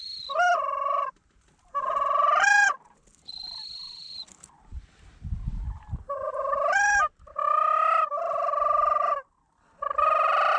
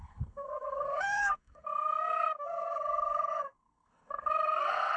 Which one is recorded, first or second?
first